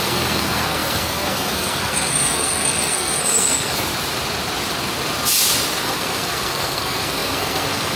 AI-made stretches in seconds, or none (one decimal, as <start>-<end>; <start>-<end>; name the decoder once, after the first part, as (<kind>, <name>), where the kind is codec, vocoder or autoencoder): 0.0-3.9 (codec, SNAC); 5.8-8.0